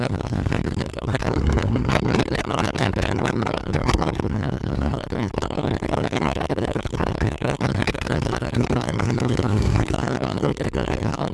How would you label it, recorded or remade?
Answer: remade